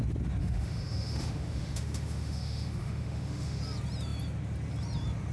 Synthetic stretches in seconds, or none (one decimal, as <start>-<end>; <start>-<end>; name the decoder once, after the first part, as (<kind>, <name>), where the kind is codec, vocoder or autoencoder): 0.4-3.6 (autoencoder, DAC-VAE)